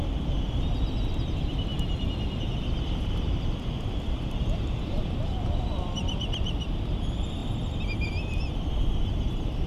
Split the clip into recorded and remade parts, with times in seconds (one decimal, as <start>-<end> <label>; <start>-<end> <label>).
0.0-9.7 remade